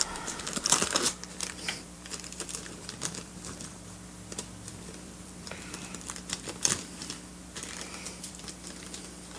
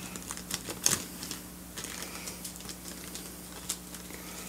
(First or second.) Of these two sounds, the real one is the second